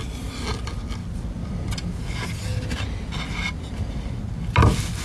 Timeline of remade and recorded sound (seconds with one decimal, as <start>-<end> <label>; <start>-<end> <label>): 0.0-5.0 recorded